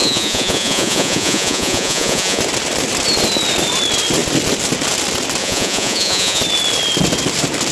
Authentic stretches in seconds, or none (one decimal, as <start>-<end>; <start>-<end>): 2.4-5.4; 6.4-7.7